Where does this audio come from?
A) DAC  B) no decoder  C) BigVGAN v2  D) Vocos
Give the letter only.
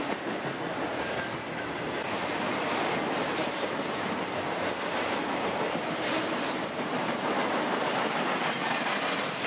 B